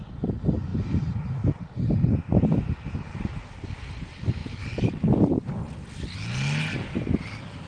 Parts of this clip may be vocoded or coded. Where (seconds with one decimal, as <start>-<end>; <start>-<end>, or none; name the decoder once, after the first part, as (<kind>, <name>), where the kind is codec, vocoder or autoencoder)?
none